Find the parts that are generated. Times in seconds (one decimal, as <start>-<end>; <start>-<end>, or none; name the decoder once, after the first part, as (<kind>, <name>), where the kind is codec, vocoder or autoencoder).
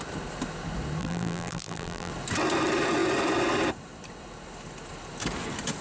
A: 1.0-2.1 (vocoder, BigVGAN v2)